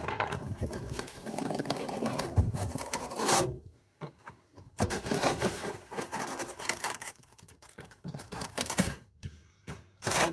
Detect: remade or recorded remade